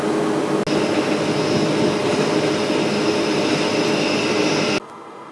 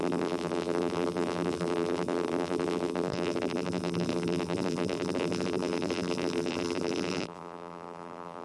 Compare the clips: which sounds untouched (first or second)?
first